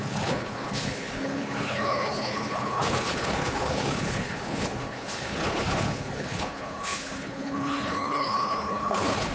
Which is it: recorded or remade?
remade